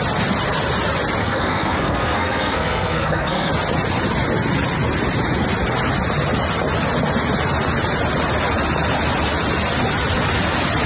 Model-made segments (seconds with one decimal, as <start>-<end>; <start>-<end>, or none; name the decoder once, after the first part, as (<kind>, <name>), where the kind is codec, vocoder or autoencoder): 1.2-3.5 (codec, SNAC)